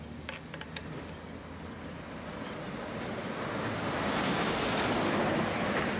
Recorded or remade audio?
recorded